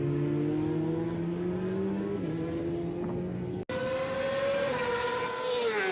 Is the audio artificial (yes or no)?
no